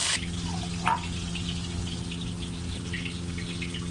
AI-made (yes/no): no